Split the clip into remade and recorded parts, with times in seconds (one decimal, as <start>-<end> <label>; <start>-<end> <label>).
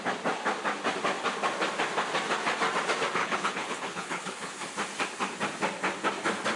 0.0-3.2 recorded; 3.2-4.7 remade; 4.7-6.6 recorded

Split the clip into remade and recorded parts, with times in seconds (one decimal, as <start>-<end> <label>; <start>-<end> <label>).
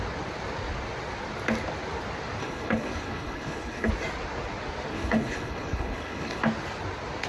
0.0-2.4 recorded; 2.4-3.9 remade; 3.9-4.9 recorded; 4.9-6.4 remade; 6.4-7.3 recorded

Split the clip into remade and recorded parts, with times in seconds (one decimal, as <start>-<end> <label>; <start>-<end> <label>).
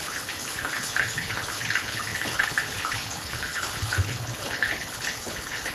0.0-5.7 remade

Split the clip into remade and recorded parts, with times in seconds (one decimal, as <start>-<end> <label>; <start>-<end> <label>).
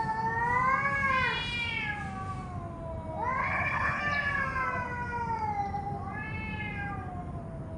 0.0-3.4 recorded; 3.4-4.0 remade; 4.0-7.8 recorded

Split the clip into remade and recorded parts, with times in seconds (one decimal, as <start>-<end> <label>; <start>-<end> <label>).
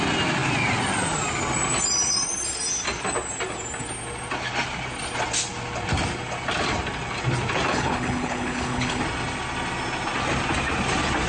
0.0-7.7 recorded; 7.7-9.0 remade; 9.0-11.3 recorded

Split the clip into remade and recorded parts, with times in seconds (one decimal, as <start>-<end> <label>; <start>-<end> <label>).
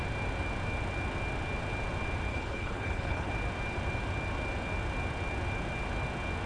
0.0-2.3 recorded; 2.3-3.3 remade; 3.3-6.5 recorded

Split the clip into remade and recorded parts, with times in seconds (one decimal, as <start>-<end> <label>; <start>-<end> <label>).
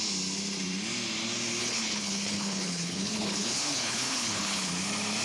0.0-1.6 recorded; 1.6-4.7 remade; 4.7-5.2 recorded